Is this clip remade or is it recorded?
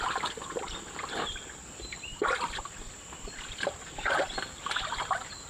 remade